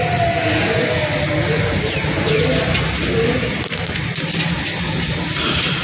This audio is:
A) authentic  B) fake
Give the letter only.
A